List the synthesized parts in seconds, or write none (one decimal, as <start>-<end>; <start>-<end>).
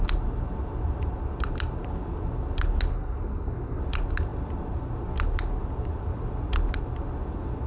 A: 2.9-3.8